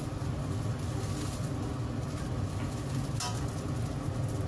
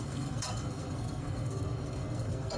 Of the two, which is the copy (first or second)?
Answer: second